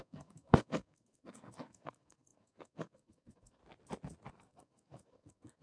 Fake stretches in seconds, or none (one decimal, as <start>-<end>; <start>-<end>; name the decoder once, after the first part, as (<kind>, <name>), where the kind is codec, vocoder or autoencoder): 0.0-3.6 (codec, SNAC); 4.3-5.6